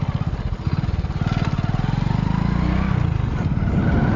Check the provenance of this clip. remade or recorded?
recorded